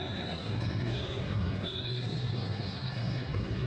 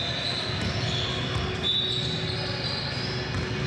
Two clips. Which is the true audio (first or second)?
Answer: second